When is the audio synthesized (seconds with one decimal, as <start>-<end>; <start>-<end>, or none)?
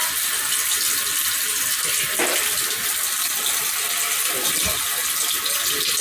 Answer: none